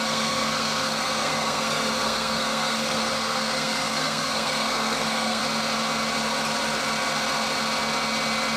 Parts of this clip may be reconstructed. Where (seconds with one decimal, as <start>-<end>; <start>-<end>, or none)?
0.0-5.4